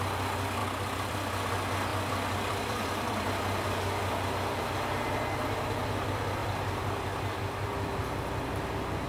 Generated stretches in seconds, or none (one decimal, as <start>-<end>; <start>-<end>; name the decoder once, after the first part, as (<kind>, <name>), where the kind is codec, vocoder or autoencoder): 1.9-4.6 (vocoder, BigVGAN v2); 6.4-8.0